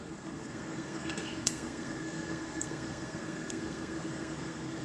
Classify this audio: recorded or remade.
remade